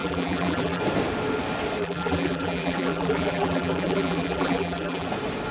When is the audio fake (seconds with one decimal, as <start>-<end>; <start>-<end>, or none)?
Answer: 0.0-0.8; 1.8-5.1